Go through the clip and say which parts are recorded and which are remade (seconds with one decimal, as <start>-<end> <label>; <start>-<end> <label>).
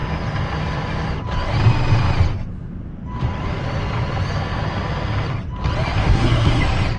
0.0-6.0 recorded; 6.0-6.6 remade; 6.6-7.0 recorded